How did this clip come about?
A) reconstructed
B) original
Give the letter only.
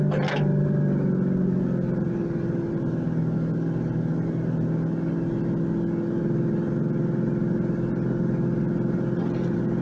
B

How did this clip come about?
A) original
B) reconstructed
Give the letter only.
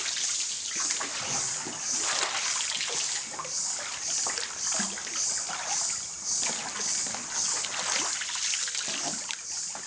A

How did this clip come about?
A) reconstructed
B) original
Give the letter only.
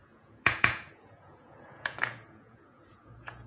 A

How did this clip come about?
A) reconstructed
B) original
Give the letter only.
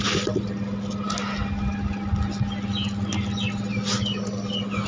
B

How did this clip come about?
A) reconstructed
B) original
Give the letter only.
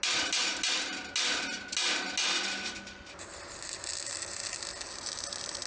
B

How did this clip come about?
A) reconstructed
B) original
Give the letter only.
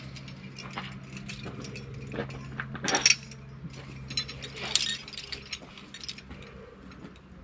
B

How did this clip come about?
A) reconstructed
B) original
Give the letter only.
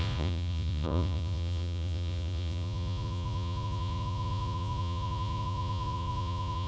A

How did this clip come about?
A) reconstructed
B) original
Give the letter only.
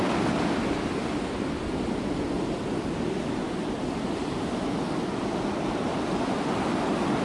B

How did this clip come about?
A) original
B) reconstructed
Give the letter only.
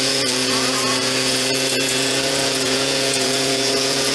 B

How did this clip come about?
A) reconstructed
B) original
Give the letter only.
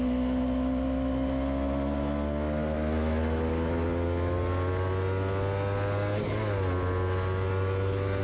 B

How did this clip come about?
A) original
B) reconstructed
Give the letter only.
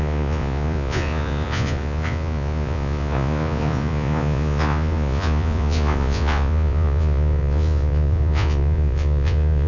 B